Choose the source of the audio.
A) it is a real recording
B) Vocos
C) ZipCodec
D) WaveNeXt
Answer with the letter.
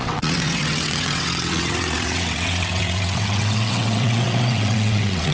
D